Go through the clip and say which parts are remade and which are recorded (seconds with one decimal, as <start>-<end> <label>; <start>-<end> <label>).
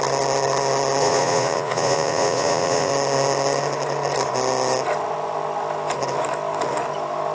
0.0-1.0 recorded; 1.0-2.9 remade; 2.9-7.3 recorded